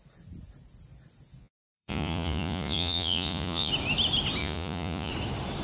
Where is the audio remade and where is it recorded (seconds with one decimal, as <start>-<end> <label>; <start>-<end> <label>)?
0.0-1.4 recorded; 1.4-3.7 remade; 3.7-4.4 recorded; 4.4-5.1 remade; 5.1-5.6 recorded

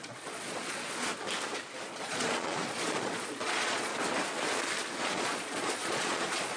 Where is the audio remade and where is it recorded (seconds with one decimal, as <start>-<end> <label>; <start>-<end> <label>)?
0.0-1.1 remade; 1.1-1.9 recorded; 1.9-3.9 remade; 3.9-5.0 recorded; 5.0-6.6 remade

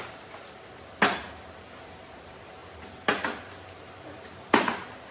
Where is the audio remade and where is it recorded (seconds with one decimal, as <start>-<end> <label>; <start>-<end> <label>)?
0.0-5.1 recorded

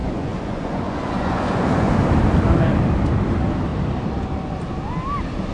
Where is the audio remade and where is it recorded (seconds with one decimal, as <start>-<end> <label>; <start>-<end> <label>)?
0.0-1.9 remade; 1.9-5.5 recorded

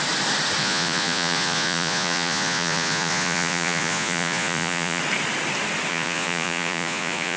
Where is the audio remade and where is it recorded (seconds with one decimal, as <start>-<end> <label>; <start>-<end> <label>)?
0.0-0.6 recorded; 0.6-5.0 remade; 5.0-5.9 recorded; 5.9-7.4 remade